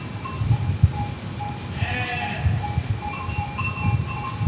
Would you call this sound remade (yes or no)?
no